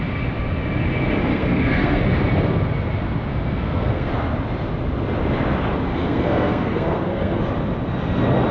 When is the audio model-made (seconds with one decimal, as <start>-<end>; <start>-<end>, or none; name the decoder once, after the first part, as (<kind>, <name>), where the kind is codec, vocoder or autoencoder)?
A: 1.3-2.0 (codec, SNAC); 3.3-4.1; 5.9-7.4